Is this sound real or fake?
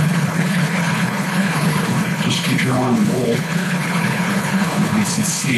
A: fake